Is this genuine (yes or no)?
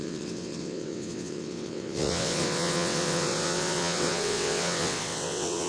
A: no